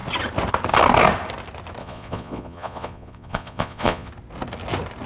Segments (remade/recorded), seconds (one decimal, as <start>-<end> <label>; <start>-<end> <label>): 0.0-1.8 recorded; 1.8-4.1 remade; 4.1-5.1 recorded